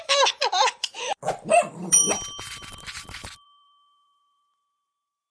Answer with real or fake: fake